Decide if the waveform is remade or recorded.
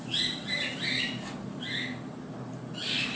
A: recorded